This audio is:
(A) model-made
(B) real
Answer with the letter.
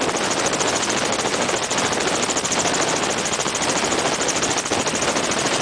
B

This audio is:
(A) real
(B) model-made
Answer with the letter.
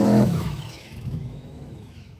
B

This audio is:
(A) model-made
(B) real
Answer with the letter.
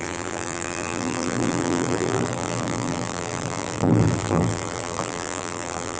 A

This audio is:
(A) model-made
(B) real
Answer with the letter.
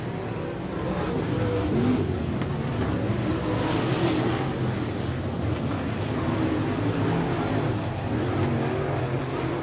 B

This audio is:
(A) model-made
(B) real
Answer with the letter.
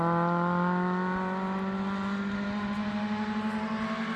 B